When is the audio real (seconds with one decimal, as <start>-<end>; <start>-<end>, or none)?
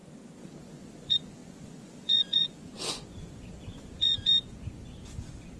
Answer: 0.0-0.6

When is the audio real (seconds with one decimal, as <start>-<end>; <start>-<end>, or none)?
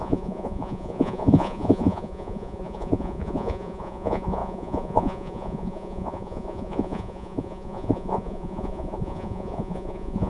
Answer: none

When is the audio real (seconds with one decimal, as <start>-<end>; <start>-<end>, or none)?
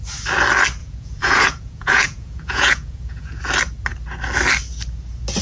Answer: 0.0-0.8; 3.4-5.4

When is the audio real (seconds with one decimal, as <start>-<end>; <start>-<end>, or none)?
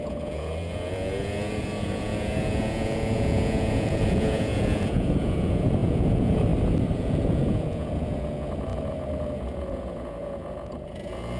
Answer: 6.5-7.0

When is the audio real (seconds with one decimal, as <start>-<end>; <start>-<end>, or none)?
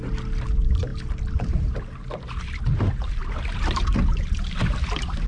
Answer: 0.0-5.3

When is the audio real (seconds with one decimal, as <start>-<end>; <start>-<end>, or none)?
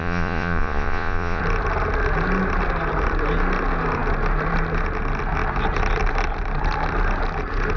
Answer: 1.4-7.8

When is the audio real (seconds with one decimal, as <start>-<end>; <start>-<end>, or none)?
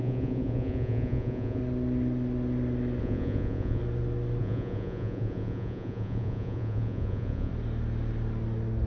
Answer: 1.6-3.0; 3.8-4.4; 7.5-8.9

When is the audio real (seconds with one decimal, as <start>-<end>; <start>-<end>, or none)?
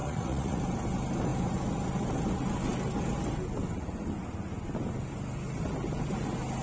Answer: 0.6-6.6